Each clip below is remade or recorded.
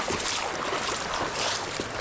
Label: recorded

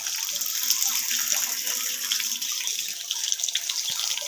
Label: recorded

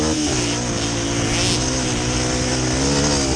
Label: recorded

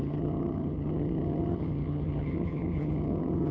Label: remade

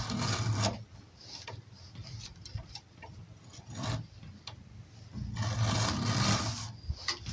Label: recorded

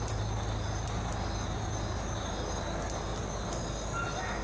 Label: recorded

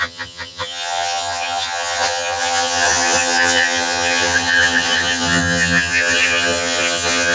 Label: remade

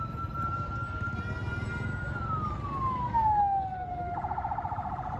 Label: recorded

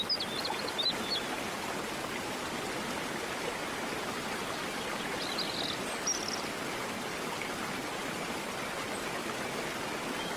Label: recorded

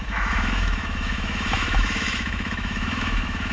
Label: remade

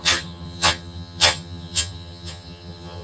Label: remade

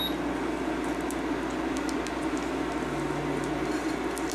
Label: recorded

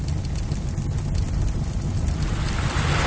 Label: recorded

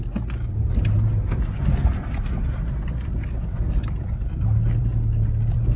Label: recorded